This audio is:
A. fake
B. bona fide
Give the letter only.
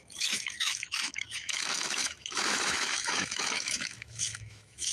A